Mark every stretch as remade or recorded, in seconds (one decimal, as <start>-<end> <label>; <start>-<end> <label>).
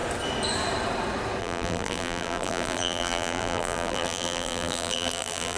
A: 0.0-1.4 recorded; 1.4-5.6 remade